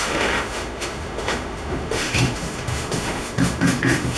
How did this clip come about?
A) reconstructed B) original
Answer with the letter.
A